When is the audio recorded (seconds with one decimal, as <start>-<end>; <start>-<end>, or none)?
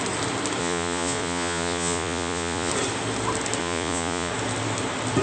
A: 0.0-0.6; 2.7-3.6; 4.3-5.2